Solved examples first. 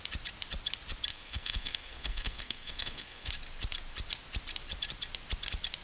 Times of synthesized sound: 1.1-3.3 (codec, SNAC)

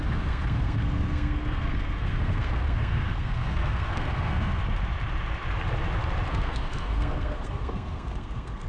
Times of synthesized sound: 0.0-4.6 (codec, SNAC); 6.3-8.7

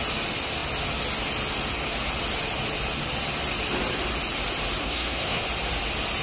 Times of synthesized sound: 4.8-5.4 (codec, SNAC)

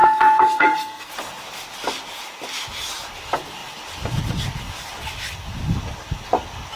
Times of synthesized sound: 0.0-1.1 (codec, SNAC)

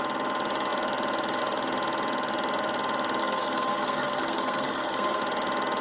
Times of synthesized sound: 3.2-5.2 (codec, SNAC)

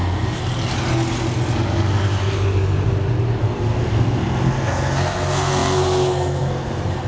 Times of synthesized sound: 0.0-0.4 (codec, SNAC); 3.4-7.1